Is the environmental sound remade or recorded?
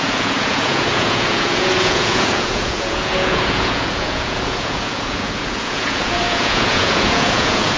remade